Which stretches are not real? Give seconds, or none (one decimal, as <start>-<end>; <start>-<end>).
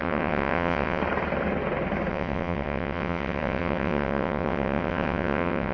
0.0-1.0; 2.1-5.7